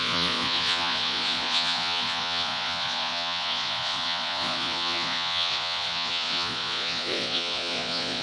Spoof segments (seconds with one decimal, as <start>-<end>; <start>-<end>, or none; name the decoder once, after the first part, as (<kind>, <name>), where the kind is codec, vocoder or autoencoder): 0.0-8.2 (vocoder, Vocos)